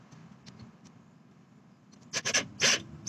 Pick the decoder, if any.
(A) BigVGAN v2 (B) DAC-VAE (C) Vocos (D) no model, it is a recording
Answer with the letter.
D